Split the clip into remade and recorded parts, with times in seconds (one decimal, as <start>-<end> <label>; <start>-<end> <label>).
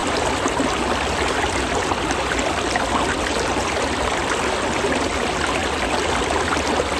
0.0-7.0 recorded